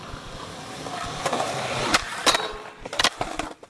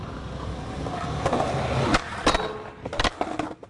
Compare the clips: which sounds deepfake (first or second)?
first